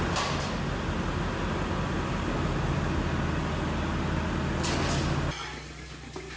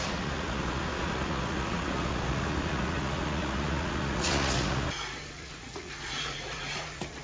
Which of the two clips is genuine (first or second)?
first